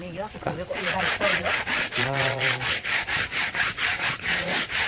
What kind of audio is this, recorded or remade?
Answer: remade